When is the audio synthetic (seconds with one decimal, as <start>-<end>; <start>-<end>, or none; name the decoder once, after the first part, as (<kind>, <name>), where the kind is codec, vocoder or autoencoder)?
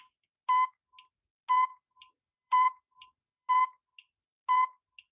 1.7-3.5 (vocoder, BigVGAN v2)